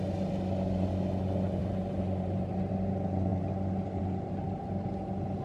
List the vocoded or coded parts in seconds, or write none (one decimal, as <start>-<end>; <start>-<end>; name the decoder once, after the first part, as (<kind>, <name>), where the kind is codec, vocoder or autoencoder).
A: 1.6-2.7 (vocoder, BigVGAN v2)